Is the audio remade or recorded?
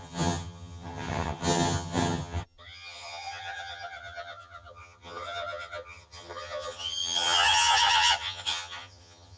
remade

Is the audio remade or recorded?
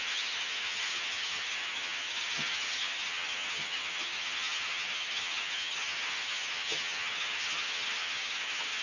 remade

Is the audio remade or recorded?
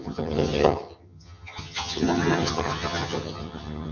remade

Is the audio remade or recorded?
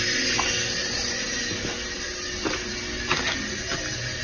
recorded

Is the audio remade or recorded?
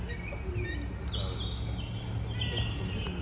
recorded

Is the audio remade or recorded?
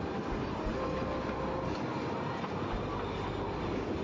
recorded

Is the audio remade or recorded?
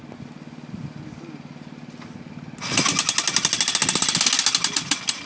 recorded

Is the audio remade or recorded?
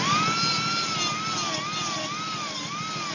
recorded